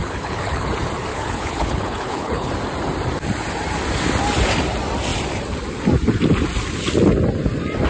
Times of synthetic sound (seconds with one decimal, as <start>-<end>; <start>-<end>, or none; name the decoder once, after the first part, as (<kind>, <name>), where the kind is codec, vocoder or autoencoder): 0.0-0.7 (codec, HILCodec); 1.1-2.5